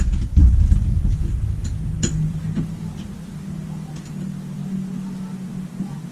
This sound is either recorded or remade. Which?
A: recorded